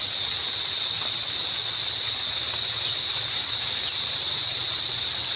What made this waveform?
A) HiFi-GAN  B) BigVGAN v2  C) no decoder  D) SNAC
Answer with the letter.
C